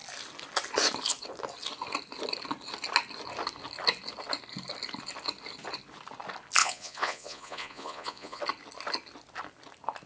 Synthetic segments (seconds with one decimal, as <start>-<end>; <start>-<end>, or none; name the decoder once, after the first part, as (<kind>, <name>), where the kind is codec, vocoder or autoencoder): 6.6-8.4 (vocoder, Vocos)